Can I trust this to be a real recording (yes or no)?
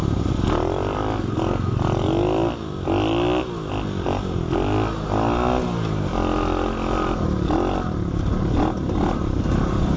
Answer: yes